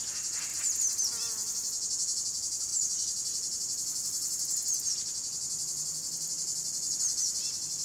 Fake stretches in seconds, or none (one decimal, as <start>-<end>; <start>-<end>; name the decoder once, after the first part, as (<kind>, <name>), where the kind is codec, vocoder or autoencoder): 0.5-1.1 (vocoder, BigVGAN v2)

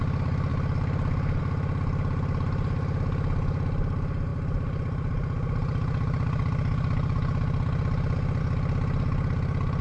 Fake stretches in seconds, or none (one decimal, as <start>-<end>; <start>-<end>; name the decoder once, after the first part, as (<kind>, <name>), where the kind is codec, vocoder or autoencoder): none